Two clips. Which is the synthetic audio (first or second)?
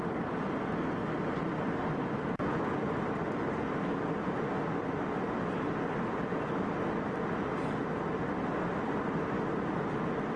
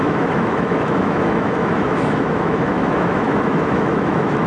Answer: second